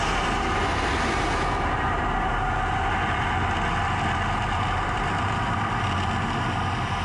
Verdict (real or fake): real